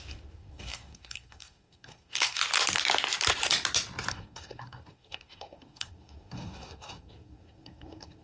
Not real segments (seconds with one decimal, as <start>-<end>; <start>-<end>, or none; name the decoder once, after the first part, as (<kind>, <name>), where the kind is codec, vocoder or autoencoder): 0.0-2.4 (codec, SNAC); 4.1-8.2